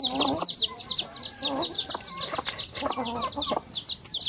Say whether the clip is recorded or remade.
recorded